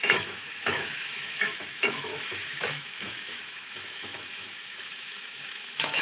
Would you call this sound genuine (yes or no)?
no